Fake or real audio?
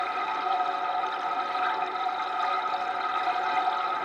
real